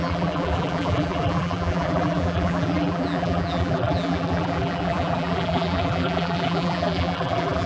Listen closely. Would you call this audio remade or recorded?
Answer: remade